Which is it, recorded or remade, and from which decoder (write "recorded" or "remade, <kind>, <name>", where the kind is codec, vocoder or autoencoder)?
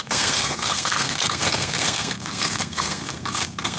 remade, codec, SNAC